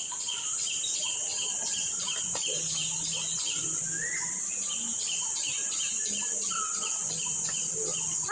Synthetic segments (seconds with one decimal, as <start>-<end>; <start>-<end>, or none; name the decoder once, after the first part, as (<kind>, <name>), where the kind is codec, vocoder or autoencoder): 1.3-2.3 (vocoder, BigVGAN v2); 2.8-7.8